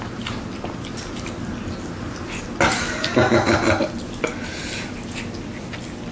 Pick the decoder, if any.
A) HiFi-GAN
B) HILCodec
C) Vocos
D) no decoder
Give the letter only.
D